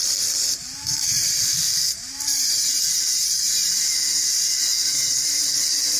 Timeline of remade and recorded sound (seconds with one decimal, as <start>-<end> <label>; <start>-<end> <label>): 0.0-6.0 remade